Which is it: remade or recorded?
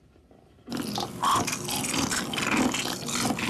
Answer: recorded